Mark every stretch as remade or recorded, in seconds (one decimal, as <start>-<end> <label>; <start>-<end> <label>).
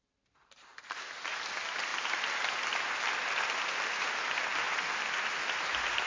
0.0-1.9 recorded; 1.9-3.1 remade; 3.1-6.1 recorded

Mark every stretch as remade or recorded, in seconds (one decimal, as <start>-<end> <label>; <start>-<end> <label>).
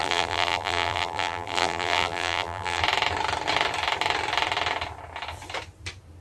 0.0-2.8 remade; 2.8-6.2 recorded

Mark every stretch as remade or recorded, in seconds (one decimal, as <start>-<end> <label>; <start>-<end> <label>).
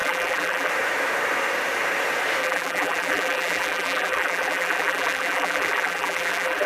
0.0-0.7 remade; 0.7-2.4 recorded; 2.4-6.7 remade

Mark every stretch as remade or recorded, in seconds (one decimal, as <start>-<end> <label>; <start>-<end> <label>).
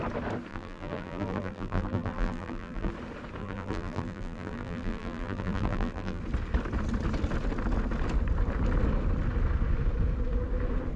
0.0-0.5 recorded; 0.5-2.9 remade; 2.9-3.4 recorded; 3.4-6.2 remade; 6.2-11.0 recorded